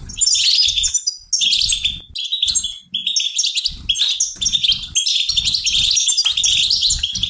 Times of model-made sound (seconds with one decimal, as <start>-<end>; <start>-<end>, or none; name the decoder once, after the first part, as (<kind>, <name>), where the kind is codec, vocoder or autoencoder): none